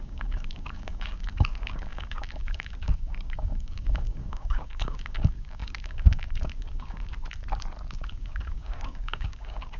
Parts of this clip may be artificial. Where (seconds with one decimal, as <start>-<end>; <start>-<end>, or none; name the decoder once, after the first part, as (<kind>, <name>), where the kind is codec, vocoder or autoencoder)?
0.0-7.1 (codec, DAC); 7.9-9.8